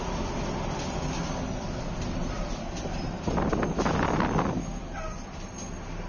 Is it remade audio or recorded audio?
recorded